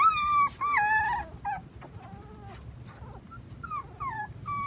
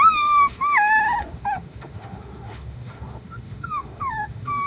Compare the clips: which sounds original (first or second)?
first